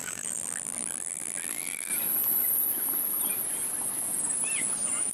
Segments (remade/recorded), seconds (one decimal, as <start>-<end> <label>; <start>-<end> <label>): 0.0-1.9 remade; 1.9-5.1 recorded